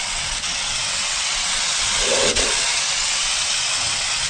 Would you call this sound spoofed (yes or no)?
yes